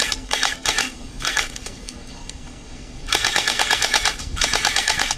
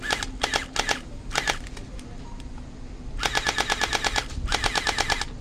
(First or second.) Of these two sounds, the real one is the second